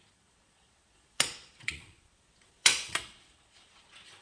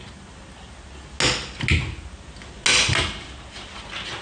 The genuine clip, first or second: second